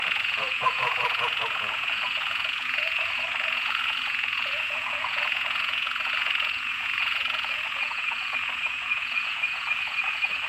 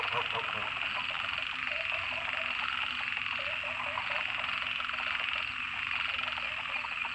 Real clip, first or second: second